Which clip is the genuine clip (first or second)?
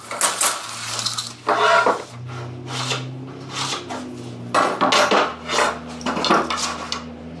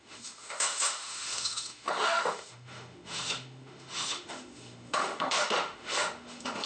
first